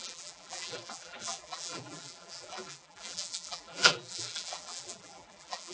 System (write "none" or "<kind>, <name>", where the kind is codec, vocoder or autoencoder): vocoder, BigVGAN v2